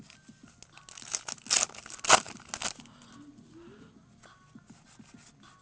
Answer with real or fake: real